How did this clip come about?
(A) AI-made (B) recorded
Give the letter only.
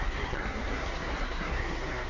A